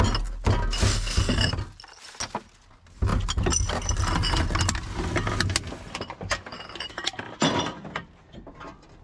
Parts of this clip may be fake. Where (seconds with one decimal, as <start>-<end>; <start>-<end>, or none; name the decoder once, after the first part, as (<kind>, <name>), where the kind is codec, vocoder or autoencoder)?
0.9-1.5 (codec, SNAC)